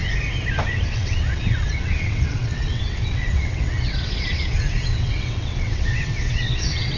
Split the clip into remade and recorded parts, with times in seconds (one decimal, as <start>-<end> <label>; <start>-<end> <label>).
0.0-0.9 recorded; 0.9-7.0 remade